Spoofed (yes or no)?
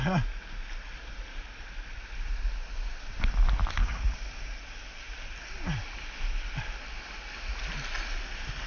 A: no